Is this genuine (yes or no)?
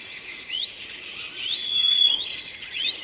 no